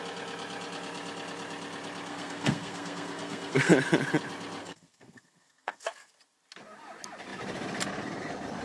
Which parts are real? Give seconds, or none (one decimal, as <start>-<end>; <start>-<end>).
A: 0.0-2.1; 3.7-4.6; 6.1-8.6